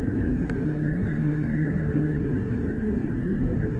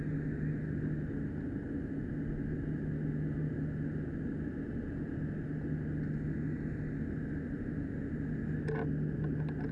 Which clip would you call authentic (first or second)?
second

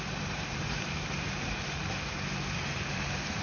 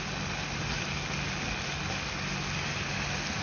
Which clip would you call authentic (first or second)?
second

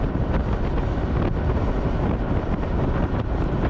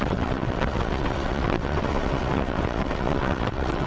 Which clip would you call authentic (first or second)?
first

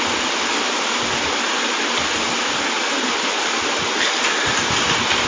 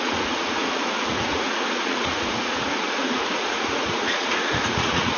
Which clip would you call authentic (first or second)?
first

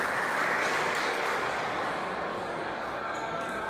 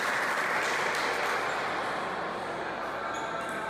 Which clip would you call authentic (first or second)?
second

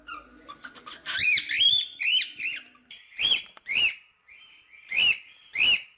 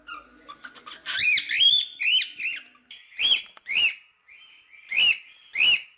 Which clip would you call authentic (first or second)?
second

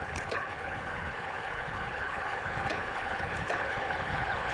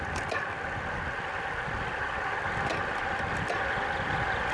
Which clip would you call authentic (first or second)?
second